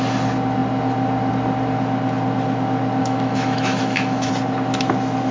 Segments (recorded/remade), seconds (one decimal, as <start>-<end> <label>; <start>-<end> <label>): 0.0-3.0 recorded; 3.0-4.3 remade; 4.3-5.3 recorded